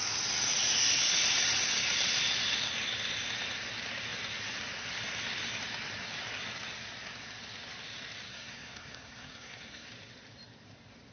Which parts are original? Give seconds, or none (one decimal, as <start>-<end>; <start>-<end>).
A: 0.0-8.3; 9.9-11.1